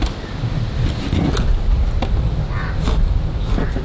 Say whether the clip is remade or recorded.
recorded